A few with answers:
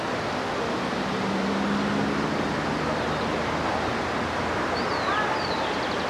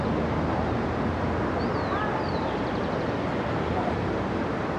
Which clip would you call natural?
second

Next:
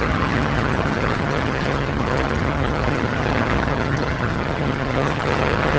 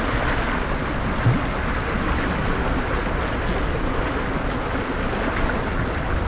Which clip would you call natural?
second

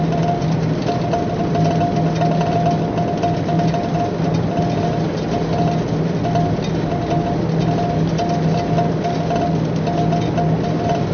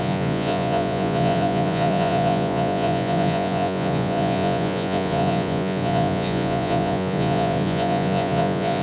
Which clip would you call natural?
first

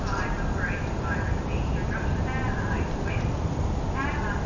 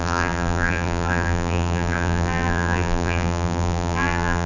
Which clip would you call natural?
first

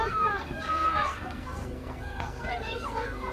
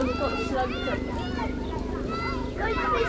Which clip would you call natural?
second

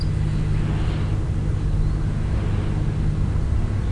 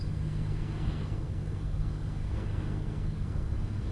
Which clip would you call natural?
first